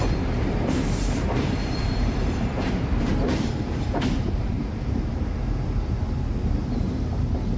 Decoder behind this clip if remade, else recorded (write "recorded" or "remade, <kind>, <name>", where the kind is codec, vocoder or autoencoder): remade, vocoder, BigVGAN v2